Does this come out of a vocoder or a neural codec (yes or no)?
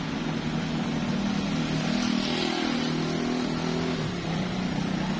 no